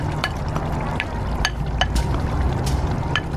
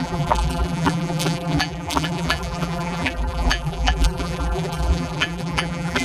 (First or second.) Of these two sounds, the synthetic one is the second